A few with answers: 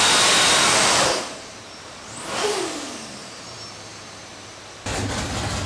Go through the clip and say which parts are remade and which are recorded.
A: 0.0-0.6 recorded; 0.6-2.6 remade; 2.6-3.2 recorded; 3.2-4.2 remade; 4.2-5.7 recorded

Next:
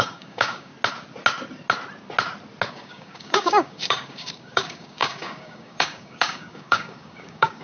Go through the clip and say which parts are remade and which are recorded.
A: 0.0-0.7 remade; 0.7-2.7 recorded; 2.7-7.6 remade

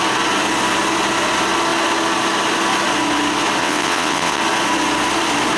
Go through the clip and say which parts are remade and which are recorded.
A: 0.0-3.6 recorded; 3.6-4.4 remade; 4.4-5.6 recorded

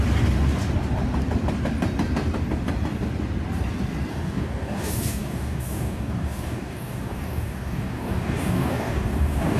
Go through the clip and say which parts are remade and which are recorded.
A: 0.0-4.1 recorded; 4.1-9.6 remade

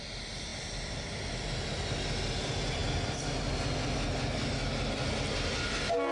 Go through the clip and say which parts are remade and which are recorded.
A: 0.0-6.1 recorded

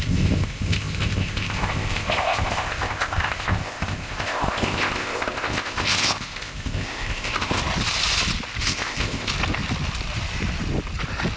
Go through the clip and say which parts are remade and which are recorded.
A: 0.0-7.6 remade; 7.6-8.6 recorded; 8.6-9.3 remade; 9.3-11.4 recorded

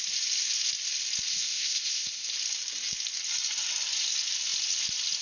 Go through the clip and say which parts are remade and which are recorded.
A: 0.0-1.3 recorded; 1.3-2.3 remade; 2.3-5.2 recorded

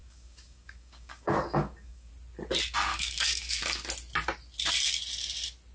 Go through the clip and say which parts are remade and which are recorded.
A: 0.0-2.1 remade; 2.1-2.9 recorded; 2.9-3.6 remade; 3.6-5.7 recorded